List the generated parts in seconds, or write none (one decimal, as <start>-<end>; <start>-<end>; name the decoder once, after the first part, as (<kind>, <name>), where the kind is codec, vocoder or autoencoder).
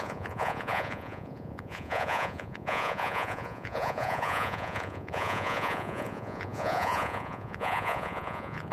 0.0-8.7 (vocoder, Vocos)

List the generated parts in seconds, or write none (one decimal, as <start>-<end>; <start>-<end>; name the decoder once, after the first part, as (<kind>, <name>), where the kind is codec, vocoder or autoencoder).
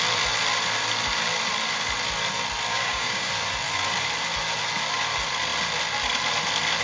2.7-3.3 (codec, DAC)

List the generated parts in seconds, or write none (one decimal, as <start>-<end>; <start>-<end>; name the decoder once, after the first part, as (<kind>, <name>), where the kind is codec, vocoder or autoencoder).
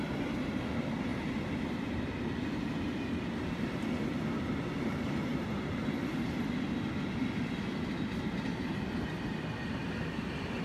1.1-3.0 (vocoder, BigVGAN v2); 5.3-6.4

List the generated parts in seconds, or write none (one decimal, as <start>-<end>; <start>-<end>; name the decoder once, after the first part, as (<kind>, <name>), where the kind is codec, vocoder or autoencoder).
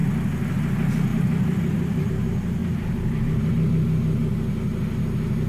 1.1-2.1 (vocoder, BigVGAN v2); 2.6-3.5